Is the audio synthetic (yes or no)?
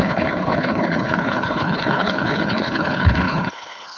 yes